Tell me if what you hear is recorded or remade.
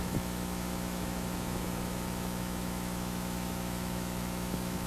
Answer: remade